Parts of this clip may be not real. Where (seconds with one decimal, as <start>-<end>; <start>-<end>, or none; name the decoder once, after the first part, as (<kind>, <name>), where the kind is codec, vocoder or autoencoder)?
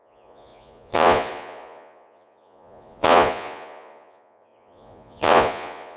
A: 0.0-6.0 (vocoder, Vocos)